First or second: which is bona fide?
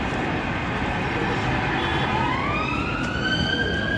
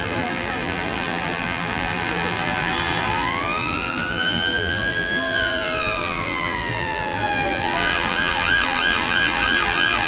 first